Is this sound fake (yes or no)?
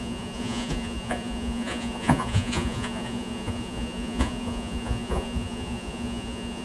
yes